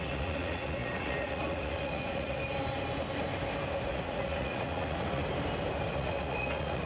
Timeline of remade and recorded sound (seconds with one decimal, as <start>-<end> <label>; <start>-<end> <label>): 0.0-2.4 remade; 2.4-3.9 recorded; 3.9-5.2 remade; 5.2-5.9 recorded; 5.9-6.9 remade